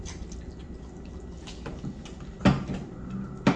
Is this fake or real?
real